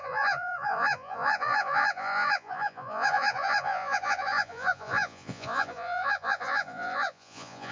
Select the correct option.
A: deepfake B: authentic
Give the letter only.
A